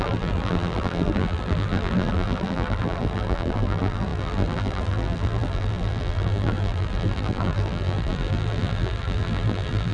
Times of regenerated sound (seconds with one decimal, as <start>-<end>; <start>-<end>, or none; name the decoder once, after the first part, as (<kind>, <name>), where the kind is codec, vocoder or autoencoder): 0.0-9.9 (vocoder, BigVGAN v2)